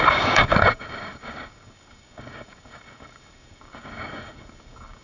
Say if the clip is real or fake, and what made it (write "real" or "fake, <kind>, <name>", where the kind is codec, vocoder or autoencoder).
fake, codec, DAC